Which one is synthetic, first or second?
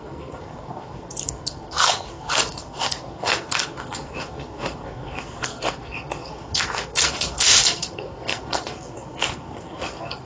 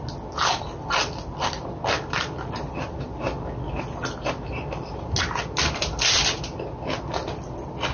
first